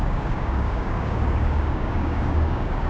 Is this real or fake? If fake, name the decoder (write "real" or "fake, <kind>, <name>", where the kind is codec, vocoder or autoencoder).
fake, codec, DAC